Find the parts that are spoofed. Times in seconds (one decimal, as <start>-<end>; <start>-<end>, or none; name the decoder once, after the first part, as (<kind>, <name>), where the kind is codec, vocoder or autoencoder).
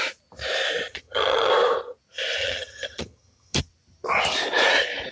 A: 0.9-1.5 (vocoder, HiFi-GAN); 2.4-3.6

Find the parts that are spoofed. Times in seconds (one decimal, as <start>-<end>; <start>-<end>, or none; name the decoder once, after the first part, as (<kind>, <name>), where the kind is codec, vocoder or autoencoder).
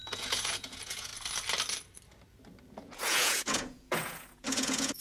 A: 0.0-1.1 (vocoder, Vocos); 2.8-5.0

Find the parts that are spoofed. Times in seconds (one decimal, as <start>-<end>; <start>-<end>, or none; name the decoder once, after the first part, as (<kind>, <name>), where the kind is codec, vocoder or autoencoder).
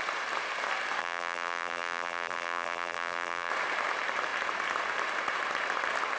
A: 1.0-3.5 (vocoder, BigVGAN v2)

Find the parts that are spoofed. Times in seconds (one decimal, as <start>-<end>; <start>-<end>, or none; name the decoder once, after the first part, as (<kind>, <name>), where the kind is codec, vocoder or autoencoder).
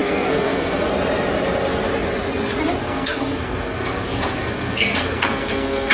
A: 0.0-0.9 (codec, SNAC); 2.8-5.9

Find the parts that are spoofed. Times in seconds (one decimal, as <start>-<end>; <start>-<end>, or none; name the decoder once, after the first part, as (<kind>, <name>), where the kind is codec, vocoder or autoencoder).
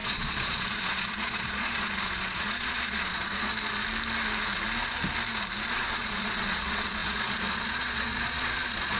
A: 0.0-3.5 (vocoder, Vocos); 5.7-9.0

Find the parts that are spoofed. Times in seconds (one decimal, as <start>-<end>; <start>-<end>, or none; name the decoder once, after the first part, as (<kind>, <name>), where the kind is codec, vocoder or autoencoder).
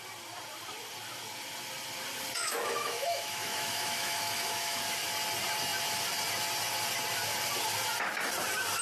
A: 2.4-4.8 (autoencoder, DAC-VAE)